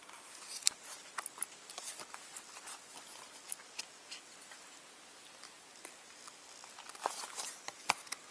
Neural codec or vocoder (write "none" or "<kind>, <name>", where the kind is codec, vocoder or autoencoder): none